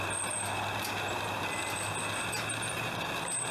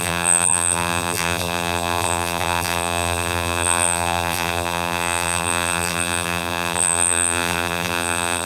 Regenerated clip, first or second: second